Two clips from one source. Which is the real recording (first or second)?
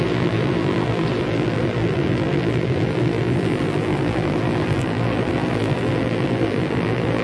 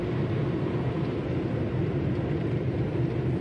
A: second